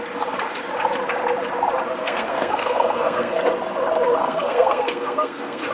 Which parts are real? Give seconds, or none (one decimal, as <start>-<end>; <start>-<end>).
0.0-2.0; 3.4-4.2